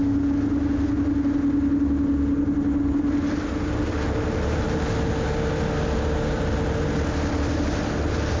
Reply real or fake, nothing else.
real